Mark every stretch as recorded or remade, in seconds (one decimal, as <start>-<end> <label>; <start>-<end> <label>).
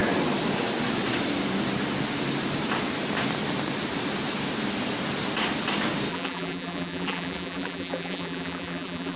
0.0-6.1 recorded; 6.1-9.2 remade